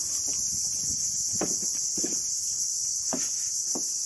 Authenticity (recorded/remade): recorded